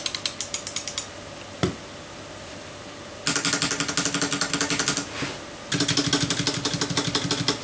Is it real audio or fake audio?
real